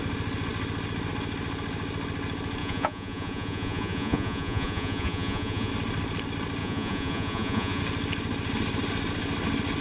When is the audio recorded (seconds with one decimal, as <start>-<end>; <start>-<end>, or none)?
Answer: 0.0-2.6; 5.7-6.6; 7.8-9.8